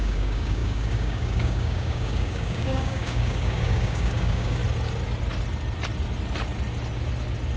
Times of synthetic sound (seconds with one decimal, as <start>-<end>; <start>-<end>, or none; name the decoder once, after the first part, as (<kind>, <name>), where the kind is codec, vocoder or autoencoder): 0.0-4.6 (codec, DAC)